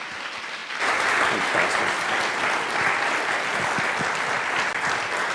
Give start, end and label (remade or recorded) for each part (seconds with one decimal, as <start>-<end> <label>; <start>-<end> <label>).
0.0-5.3 recorded